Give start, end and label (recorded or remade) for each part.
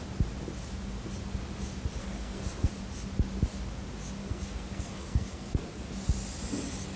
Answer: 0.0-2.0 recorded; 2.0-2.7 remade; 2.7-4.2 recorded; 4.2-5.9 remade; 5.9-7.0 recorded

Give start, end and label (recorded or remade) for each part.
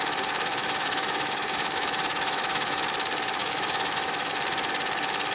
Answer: 0.0-0.5 recorded; 0.5-2.8 remade; 2.8-3.4 recorded; 3.4-4.3 remade; 4.3-5.3 recorded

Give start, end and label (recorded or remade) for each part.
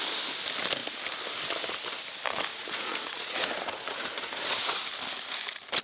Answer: 0.0-2.5 recorded; 2.5-4.8 remade; 4.8-5.8 recorded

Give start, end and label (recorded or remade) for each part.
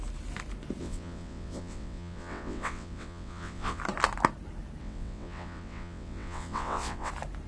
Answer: 0.0-0.8 recorded; 0.8-3.8 remade; 3.8-4.8 recorded; 4.8-7.1 remade; 7.1-7.5 recorded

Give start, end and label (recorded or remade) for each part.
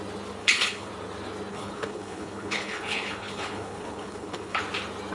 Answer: 0.0-0.4 recorded; 0.4-0.9 remade; 0.9-1.5 recorded; 1.5-4.6 remade; 4.6-5.1 recorded